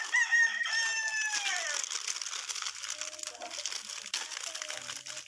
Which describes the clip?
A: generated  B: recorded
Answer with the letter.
B